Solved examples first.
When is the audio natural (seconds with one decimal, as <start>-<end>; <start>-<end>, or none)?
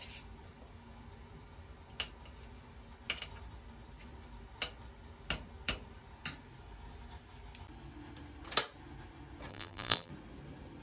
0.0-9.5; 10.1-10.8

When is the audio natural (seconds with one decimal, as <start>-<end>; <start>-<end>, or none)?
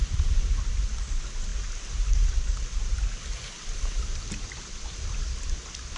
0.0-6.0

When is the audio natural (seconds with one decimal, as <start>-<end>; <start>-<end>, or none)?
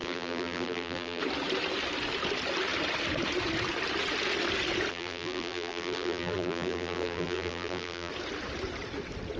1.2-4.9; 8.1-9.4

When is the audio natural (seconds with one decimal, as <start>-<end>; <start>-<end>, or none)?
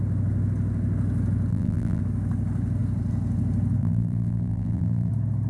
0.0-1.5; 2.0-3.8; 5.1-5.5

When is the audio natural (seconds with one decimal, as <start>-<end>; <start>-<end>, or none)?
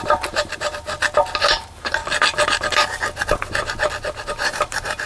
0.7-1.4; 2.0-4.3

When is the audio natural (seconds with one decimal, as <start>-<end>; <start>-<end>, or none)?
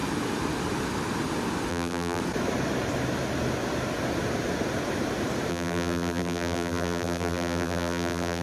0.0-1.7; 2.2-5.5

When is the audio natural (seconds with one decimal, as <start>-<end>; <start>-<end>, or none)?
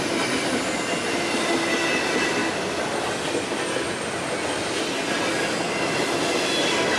0.0-7.0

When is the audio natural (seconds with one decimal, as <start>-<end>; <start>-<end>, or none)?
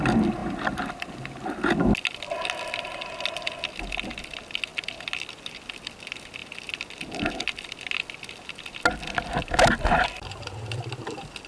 0.0-11.5